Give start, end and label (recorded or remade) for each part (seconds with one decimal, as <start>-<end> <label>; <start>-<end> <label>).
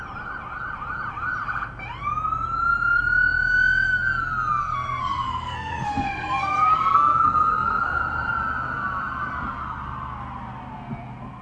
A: 0.0-4.6 recorded; 4.6-8.0 remade; 8.0-11.4 recorded